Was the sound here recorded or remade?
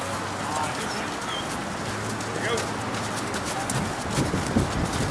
recorded